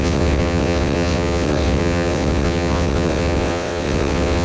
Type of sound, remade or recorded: remade